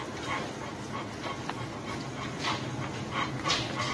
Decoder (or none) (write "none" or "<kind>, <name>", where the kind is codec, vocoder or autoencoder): vocoder, BigVGAN v2